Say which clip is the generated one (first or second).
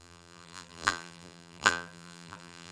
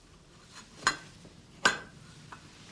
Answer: first